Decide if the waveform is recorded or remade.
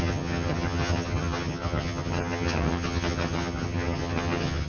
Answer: remade